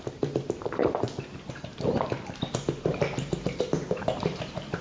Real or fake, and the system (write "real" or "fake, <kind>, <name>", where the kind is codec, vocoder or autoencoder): fake, vocoder, BigVGAN v2